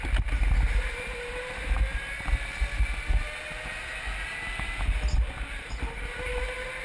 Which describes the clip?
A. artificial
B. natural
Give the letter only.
B